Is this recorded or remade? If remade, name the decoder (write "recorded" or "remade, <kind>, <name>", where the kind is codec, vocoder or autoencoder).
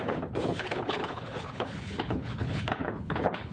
remade, codec, HILCodec